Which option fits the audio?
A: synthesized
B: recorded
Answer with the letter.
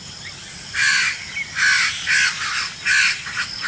B